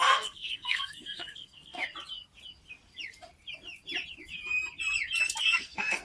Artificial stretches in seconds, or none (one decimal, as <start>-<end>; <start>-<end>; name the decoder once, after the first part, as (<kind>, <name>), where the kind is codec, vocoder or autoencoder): 0.0-1.8 (codec, SNAC); 5.4-6.0